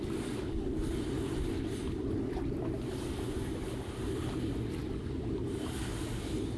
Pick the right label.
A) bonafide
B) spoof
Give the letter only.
A